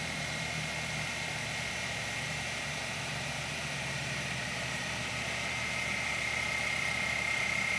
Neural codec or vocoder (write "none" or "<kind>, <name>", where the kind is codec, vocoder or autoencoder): vocoder, BigVGAN v2